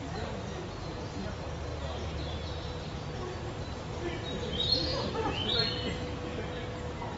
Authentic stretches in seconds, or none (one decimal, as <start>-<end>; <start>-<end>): 0.0-4.9; 5.5-7.2